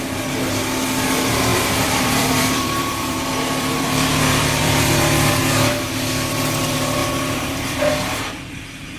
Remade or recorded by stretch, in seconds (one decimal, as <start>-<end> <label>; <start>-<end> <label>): 0.0-1.5 recorded; 1.5-5.4 remade; 5.4-7.0 recorded; 7.0-7.8 remade; 7.8-9.0 recorded